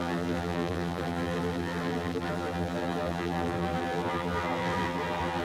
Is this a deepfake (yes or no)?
yes